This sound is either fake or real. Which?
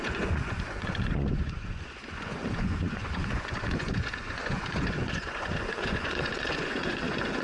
fake